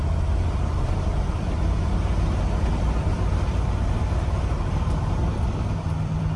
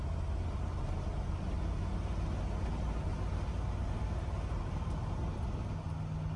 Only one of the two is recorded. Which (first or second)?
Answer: second